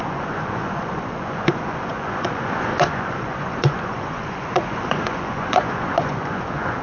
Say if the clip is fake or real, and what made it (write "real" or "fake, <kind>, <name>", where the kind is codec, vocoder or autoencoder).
fake, vocoder, Vocos